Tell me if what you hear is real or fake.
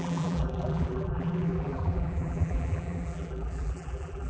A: fake